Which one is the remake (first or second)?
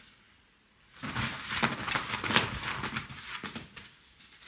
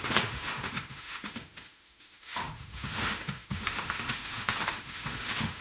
second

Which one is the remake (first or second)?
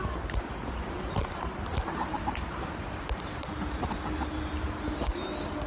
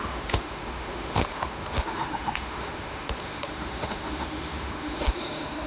second